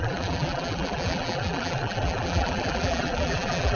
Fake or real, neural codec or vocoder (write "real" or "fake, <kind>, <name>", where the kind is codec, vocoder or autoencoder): fake, vocoder, BigVGAN v2